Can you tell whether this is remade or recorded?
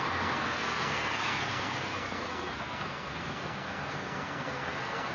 remade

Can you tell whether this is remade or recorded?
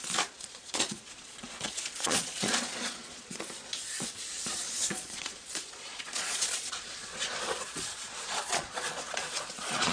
remade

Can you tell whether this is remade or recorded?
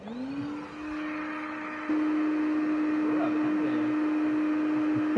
recorded